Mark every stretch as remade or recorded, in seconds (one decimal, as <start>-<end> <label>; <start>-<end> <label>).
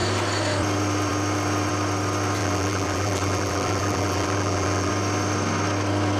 0.0-2.4 recorded; 2.4-4.9 remade; 4.9-6.2 recorded